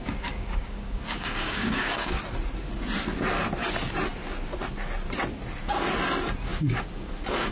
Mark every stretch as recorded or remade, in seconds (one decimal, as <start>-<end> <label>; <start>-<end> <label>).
0.0-2.2 remade; 2.2-6.5 recorded; 6.5-7.1 remade; 7.1-7.5 recorded